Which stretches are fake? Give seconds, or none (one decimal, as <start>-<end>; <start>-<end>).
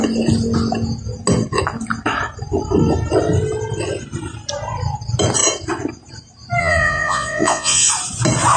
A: 6.6-7.9